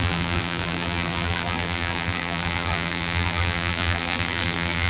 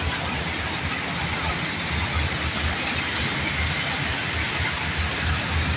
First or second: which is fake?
first